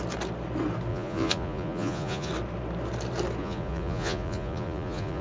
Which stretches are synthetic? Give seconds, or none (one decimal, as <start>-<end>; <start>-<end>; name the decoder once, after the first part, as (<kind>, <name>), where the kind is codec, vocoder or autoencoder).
0.9-2.3 (vocoder, Vocos); 3.4-5.2